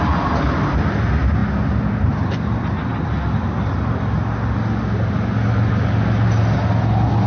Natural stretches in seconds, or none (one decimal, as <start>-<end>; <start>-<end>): 0.0-7.3